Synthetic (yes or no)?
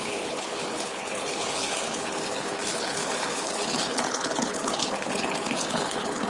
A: yes